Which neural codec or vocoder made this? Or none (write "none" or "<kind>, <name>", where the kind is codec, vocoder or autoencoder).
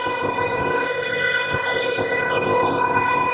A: codec, ZipCodec